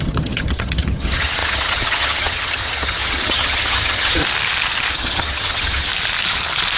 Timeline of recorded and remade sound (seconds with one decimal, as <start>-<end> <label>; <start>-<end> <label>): 0.0-4.2 remade; 4.2-4.9 recorded; 4.9-5.9 remade; 5.9-6.8 recorded